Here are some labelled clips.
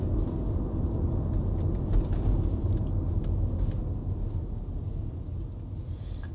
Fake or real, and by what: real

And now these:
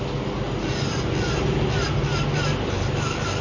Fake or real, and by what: real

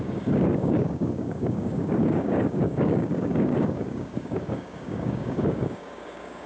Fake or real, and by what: fake, codec, DAC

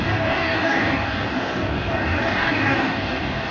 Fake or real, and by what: fake, codec, DAC